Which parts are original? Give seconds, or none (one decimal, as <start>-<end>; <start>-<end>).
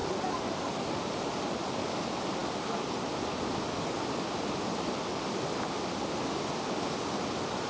0.0-7.7